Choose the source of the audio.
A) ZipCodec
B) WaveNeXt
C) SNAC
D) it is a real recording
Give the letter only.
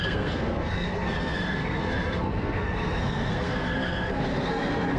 C